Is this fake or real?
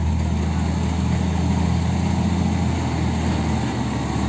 real